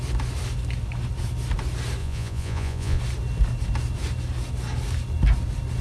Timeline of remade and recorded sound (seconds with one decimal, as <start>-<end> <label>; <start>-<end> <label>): 0.0-2.0 recorded; 2.0-3.0 remade; 3.0-5.8 recorded